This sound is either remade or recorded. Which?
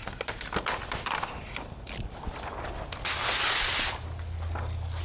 recorded